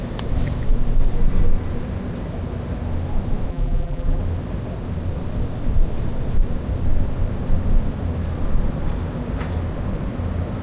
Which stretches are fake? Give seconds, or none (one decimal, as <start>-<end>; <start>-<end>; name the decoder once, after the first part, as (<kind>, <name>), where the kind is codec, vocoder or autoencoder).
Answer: 3.5-4.2 (vocoder, BigVGAN v2)